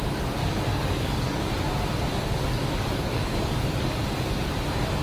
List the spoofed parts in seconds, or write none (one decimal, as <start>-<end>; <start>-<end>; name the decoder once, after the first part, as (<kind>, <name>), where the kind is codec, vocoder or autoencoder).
0.7-1.5 (codec, DAC); 2.1-4.0